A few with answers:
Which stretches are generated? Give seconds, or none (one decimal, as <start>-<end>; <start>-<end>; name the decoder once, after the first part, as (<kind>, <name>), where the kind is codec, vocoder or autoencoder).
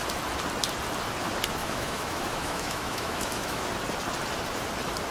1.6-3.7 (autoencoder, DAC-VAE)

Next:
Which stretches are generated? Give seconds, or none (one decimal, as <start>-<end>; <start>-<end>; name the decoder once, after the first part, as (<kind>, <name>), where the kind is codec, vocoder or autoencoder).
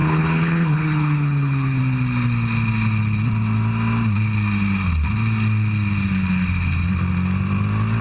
0.0-1.8 (codec, HILCodec)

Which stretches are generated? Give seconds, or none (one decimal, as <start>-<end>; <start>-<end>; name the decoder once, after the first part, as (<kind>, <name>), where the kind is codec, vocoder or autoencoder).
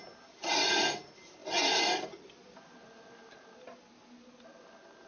none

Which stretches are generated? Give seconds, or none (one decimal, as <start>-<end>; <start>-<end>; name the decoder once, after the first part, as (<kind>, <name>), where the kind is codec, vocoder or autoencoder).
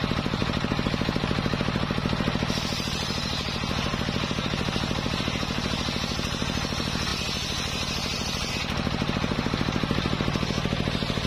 none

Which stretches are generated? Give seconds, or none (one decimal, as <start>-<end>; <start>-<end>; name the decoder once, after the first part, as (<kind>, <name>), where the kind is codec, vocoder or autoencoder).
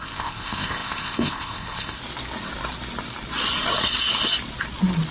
0.0-2.0 (codec, ZipCodec)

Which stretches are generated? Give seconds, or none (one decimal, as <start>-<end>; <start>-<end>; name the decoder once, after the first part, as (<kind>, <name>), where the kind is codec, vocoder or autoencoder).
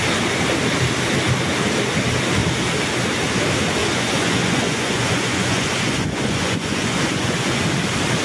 3.8-7.6 (vocoder, Vocos)